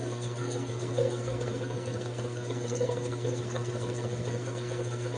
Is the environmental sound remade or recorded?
remade